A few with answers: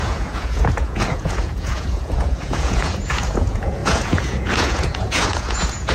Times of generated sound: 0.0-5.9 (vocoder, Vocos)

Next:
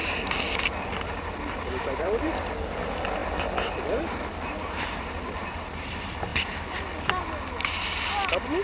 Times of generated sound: 0.8-8.6 (vocoder, BigVGAN v2)

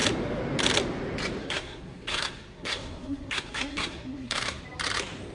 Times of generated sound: 1.4-4.6 (codec, SNAC)

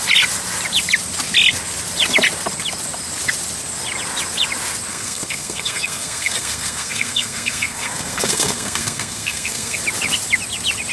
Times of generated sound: 4.9-9.8 (codec, SNAC)

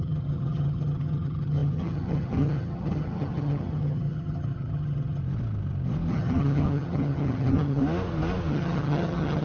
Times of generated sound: 0.0-5.2 (vocoder, HiFi-GAN); 6.1-7.8; 8.5-9.4

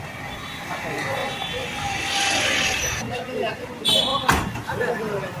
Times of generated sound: none

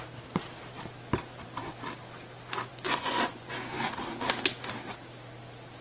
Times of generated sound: 2.7-3.8 (vocoder, Vocos)